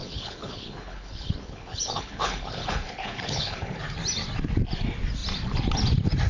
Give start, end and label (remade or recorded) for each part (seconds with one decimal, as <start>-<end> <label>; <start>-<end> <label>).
0.0-3.8 remade; 3.8-6.3 recorded